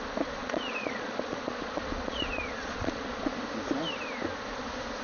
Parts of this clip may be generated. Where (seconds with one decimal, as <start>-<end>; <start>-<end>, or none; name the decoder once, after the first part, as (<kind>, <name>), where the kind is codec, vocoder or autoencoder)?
0.4-3.4 (vocoder, Vocos)